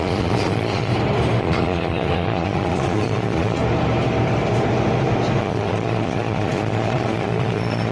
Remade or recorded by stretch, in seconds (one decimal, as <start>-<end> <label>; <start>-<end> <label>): 0.0-0.9 remade; 0.9-1.4 recorded; 1.4-3.6 remade; 3.6-5.4 recorded; 5.4-7.9 remade